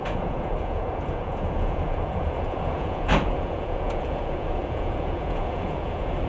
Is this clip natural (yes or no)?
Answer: no